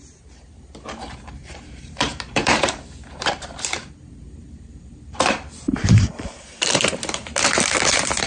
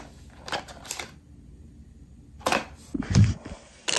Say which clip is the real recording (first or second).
second